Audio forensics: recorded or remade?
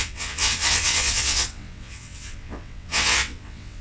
remade